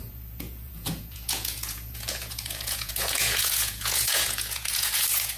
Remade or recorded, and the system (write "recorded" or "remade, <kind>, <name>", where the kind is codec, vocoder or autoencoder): remade, vocoder, Vocos